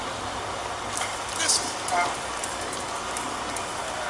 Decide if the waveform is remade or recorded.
recorded